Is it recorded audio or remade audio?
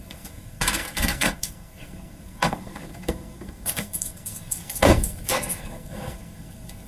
remade